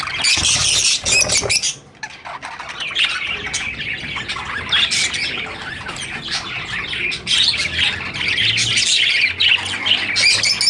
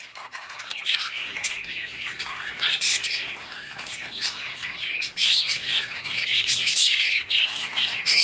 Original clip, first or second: first